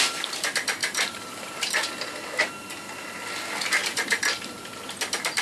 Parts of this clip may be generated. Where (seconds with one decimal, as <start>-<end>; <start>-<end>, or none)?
0.8-1.7; 3.8-4.5